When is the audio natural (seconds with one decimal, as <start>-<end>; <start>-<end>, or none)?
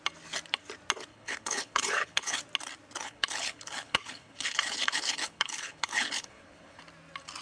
0.0-1.1; 2.4-3.0; 6.8-7.4